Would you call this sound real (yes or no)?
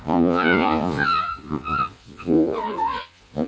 no